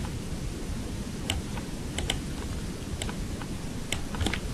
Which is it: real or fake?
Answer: real